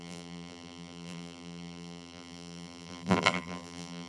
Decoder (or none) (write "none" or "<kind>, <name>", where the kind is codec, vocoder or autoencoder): vocoder, BigVGAN v2